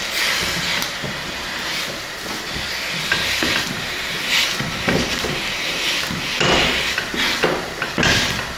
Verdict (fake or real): real